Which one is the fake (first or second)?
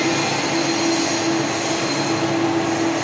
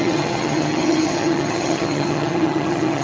second